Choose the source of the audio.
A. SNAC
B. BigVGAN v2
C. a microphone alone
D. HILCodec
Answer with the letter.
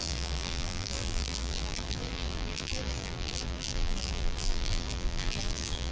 B